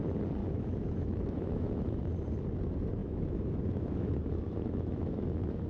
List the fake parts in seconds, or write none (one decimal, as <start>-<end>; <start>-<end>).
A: 0.4-2.0; 3.0-5.7